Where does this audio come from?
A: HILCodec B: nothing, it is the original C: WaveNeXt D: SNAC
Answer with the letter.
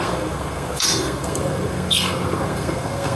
D